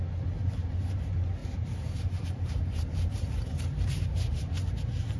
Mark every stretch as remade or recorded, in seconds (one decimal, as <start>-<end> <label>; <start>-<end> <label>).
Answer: 0.0-1.4 recorded; 1.4-4.5 remade; 4.5-5.2 recorded